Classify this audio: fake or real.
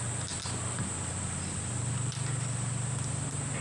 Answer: real